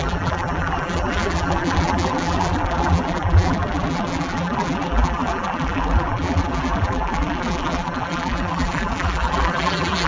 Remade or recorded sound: remade